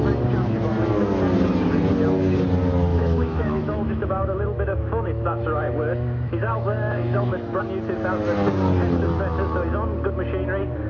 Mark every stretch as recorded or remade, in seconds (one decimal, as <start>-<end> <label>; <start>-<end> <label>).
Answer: 0.0-2.9 recorded; 2.9-7.6 remade; 7.6-10.9 recorded